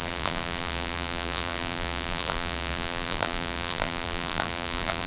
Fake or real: fake